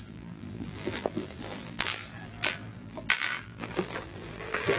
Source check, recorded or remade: remade